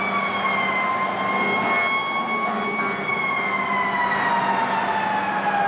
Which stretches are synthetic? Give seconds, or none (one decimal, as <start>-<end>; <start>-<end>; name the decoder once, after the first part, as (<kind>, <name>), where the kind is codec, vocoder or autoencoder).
none